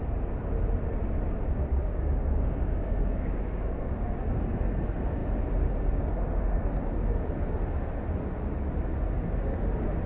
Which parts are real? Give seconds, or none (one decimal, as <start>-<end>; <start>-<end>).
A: 0.0-1.7; 4.2-10.1